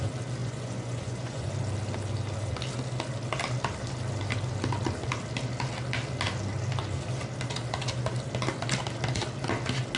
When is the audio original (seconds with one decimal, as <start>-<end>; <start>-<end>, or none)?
0.0-0.4; 1.5-10.0